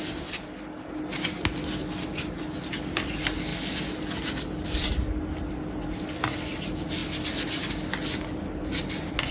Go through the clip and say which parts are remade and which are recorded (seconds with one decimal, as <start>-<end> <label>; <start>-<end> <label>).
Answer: 0.0-9.3 recorded